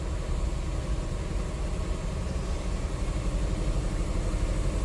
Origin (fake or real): real